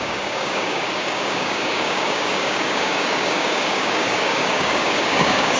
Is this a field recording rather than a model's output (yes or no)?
no